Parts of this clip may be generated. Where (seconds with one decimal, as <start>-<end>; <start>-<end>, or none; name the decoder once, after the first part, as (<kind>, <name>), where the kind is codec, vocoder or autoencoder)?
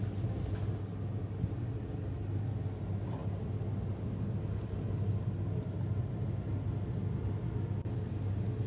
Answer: none